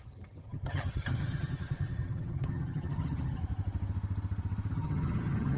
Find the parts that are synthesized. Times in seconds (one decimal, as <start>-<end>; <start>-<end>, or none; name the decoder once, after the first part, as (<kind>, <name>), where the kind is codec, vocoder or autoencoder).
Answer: 0.0-3.4 (vocoder, HiFi-GAN); 4.7-5.6